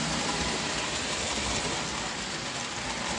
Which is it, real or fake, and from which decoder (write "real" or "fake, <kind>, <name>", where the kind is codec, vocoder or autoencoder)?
real